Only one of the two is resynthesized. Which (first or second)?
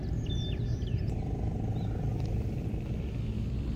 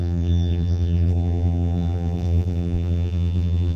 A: second